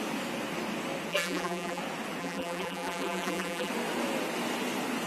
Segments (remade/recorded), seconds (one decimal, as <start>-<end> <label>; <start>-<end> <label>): 0.0-1.1 recorded; 1.1-1.8 remade; 1.8-2.2 recorded; 2.2-3.7 remade; 3.7-5.1 recorded